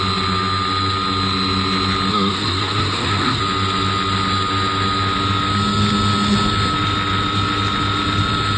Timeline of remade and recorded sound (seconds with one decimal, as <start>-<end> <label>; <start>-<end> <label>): 0.0-2.1 recorded; 2.1-3.4 remade; 3.4-8.6 recorded